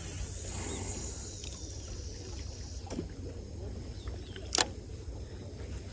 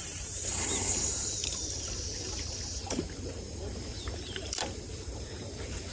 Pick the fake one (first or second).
second